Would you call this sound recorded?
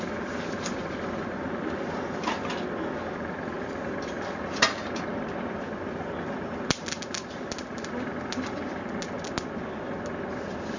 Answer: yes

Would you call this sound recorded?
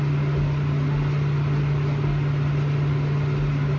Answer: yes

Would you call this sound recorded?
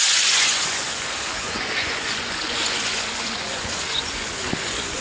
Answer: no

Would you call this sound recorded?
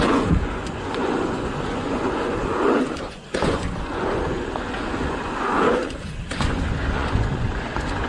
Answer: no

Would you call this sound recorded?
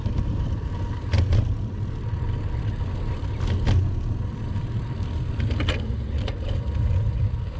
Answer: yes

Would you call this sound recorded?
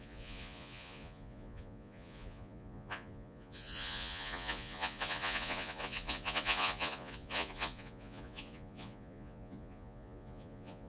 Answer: no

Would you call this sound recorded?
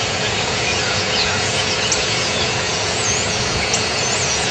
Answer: no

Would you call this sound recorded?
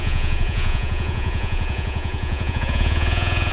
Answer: no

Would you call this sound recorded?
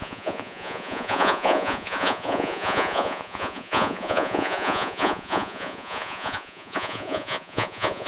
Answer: no